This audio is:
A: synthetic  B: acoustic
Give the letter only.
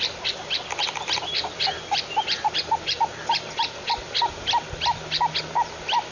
B